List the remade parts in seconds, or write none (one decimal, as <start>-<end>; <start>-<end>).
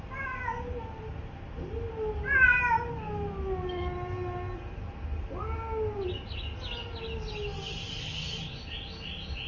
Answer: none